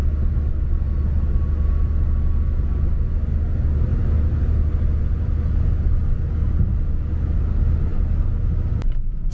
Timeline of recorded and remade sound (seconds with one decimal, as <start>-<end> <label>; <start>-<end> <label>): 0.0-9.3 recorded